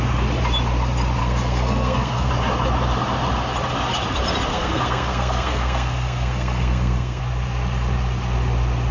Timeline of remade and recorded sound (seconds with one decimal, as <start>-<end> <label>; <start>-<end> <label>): 0.0-1.2 recorded; 1.2-2.3 remade; 2.3-4.5 recorded; 4.5-7.2 remade; 7.2-8.9 recorded